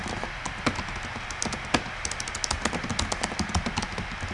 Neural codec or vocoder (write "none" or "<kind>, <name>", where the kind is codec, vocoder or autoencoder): none